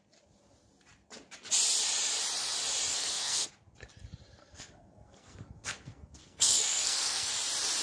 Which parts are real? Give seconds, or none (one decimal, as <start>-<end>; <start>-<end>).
0.0-2.9; 3.5-4.4; 7.3-7.8